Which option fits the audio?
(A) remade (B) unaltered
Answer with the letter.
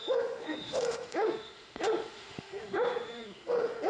A